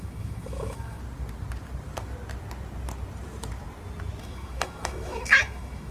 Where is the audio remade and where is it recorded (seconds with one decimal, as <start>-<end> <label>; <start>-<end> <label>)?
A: 0.0-1.0 remade; 1.0-4.2 recorded; 4.2-5.9 remade

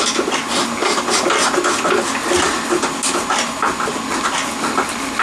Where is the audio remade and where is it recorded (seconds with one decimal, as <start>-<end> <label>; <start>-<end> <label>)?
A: 0.0-5.2 recorded

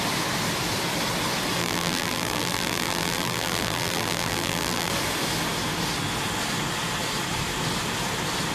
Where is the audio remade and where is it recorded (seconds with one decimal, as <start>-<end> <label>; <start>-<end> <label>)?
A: 0.0-1.6 recorded; 1.6-4.9 remade; 4.9-8.5 recorded

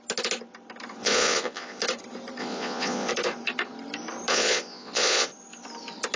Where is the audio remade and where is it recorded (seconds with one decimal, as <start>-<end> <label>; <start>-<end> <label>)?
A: 0.0-1.0 recorded; 1.0-1.8 remade; 1.8-2.4 recorded; 2.4-3.1 remade; 3.1-4.3 recorded; 4.3-5.3 remade; 5.3-6.2 recorded

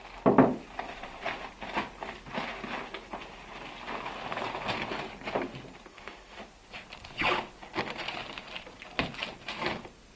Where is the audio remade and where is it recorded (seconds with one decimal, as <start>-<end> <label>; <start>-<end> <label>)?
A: 0.0-5.9 recorded; 5.9-6.4 remade; 6.4-10.2 recorded

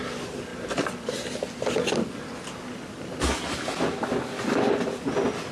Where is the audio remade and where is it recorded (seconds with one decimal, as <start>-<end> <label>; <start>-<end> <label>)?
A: 0.0-5.5 recorded

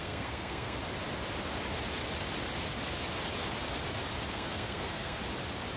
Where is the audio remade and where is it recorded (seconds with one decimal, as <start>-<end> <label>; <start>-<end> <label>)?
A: 0.0-0.8 remade; 0.8-4.3 recorded; 4.3-5.2 remade; 5.2-5.8 recorded